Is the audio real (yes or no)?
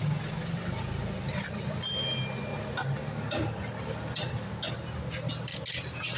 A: yes